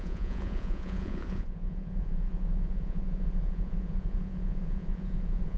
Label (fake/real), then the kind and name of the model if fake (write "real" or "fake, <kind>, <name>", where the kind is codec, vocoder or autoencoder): fake, vocoder, Vocos